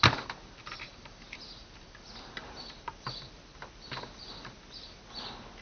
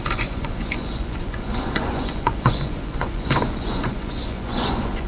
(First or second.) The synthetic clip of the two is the second